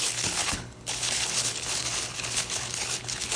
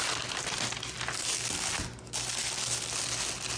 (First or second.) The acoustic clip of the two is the second